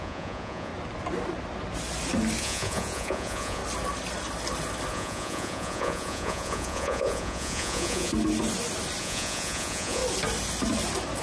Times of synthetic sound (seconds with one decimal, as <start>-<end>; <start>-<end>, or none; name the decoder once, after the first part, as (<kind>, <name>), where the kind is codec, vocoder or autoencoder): 0.0-0.7 (vocoder, Vocos); 2.4-3.6; 4.9-8.1; 9.0-10.0